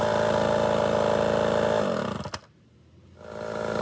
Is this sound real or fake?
real